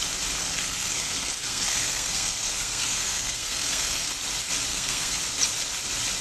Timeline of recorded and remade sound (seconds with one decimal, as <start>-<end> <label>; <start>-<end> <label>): 0.0-0.4 recorded; 0.4-4.1 remade; 4.1-4.7 recorded; 4.7-5.2 remade; 5.2-6.2 recorded